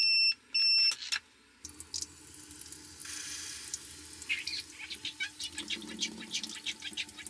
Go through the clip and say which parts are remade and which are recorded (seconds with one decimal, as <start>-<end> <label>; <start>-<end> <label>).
0.0-4.5 recorded; 4.5-5.0 remade; 5.0-7.3 recorded